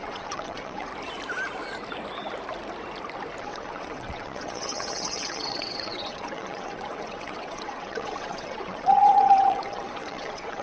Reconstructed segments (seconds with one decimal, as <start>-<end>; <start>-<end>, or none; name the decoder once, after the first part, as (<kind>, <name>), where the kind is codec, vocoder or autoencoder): 0.0-0.9 (vocoder, WaveNeXt); 3.4-10.6